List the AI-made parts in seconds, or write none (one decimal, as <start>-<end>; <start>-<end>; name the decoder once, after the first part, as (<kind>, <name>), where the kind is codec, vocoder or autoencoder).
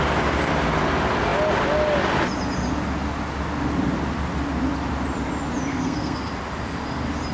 5.7-6.3 (codec, SNAC)